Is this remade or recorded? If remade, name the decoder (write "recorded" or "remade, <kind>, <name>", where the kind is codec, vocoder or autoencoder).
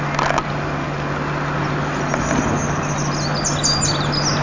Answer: recorded